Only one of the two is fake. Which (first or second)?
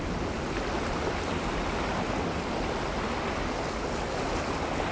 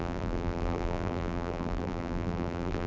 second